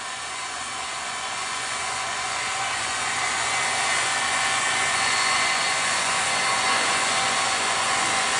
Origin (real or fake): fake